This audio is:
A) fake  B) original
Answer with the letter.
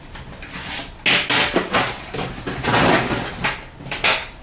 B